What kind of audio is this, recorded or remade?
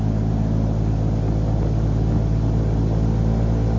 recorded